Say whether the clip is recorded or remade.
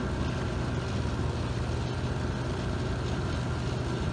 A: recorded